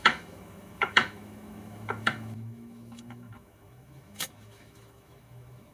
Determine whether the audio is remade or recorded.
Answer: remade